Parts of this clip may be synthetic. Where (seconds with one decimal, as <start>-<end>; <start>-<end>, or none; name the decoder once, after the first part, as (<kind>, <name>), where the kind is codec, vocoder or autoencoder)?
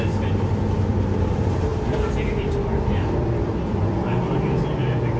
0.0-1.7 (vocoder, BigVGAN v2); 2.4-3.9; 4.8-5.2